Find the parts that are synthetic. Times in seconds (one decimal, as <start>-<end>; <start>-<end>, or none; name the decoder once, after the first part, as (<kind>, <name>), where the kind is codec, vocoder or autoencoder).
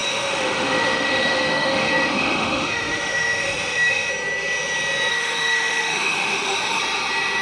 0.0-4.1 (autoencoder, DAC-VAE); 5.1-6.8